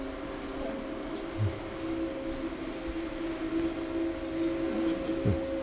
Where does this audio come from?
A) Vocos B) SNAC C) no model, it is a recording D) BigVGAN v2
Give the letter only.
C